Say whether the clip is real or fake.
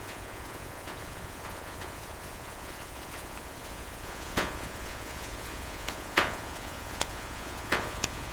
fake